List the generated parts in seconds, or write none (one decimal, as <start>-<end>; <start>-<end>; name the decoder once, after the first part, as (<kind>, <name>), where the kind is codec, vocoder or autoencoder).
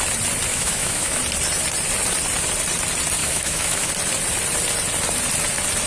0.5-1.2 (autoencoder, DAC-VAE); 3.2-3.9